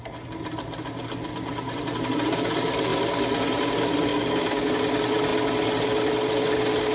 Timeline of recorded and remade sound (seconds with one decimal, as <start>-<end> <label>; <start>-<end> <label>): 0.0-4.1 recorded; 4.1-4.7 remade; 4.7-6.9 recorded